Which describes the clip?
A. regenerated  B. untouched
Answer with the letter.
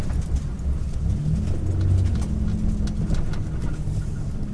B